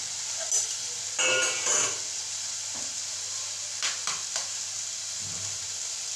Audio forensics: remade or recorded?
recorded